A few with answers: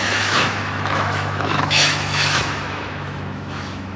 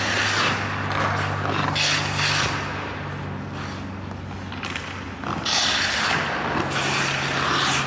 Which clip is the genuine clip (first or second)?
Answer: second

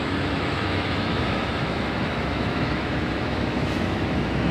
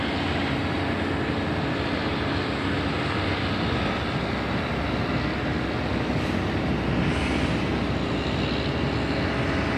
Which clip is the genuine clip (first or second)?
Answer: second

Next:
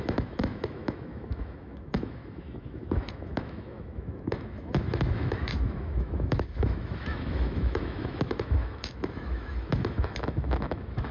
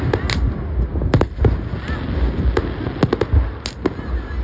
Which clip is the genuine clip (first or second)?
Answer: second